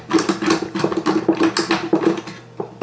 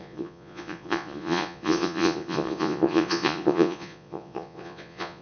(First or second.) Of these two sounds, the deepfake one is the second